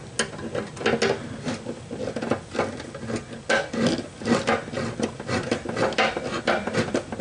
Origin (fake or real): real